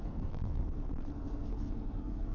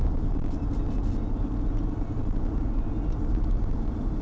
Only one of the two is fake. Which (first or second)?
first